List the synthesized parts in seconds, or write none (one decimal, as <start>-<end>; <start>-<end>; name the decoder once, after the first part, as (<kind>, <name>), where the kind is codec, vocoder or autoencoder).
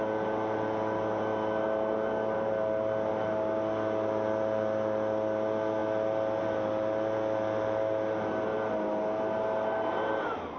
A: none